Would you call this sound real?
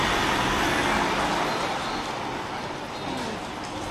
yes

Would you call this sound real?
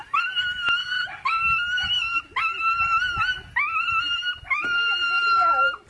yes